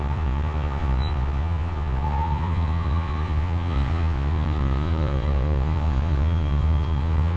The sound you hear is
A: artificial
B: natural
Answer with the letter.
A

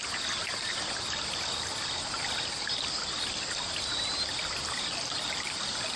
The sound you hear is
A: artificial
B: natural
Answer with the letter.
B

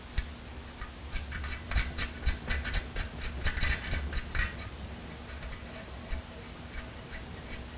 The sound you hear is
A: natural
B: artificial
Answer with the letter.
A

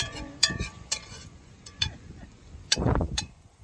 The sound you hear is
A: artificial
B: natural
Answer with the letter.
A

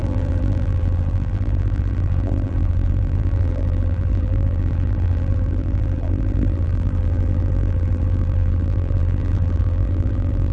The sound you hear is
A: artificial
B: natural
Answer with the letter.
A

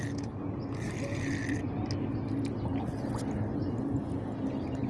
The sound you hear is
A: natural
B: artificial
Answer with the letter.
A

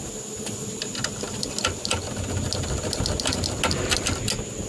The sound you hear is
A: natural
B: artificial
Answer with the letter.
A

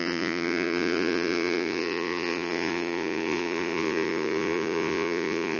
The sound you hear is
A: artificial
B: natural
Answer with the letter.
A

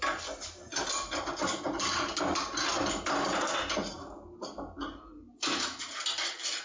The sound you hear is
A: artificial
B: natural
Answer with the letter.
B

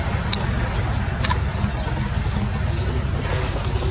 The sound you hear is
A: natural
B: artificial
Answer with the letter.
A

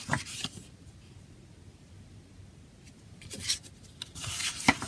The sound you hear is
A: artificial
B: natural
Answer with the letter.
B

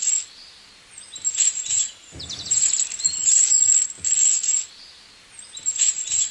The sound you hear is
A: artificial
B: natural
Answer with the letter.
B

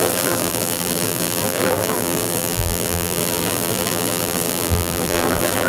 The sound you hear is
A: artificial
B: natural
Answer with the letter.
A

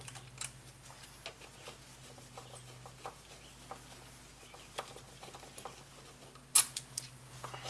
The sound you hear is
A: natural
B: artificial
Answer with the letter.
A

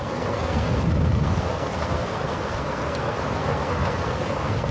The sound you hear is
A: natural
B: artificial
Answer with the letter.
B